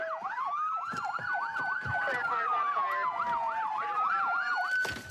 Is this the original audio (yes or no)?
yes